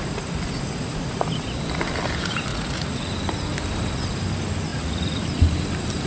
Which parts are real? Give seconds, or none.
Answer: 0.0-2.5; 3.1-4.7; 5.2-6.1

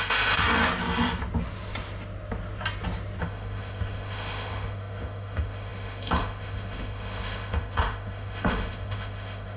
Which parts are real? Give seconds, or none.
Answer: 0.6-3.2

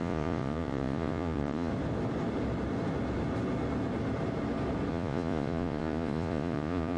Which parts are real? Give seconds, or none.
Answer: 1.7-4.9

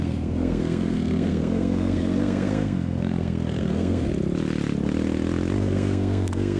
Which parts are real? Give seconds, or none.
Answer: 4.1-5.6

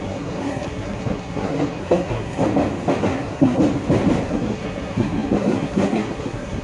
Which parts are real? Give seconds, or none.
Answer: 2.4-3.0; 3.6-4.3